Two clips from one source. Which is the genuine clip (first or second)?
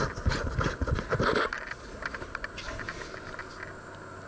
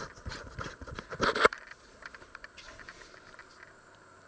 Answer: first